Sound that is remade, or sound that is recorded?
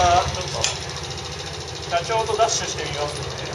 recorded